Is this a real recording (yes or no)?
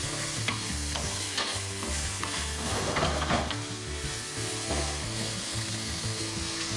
no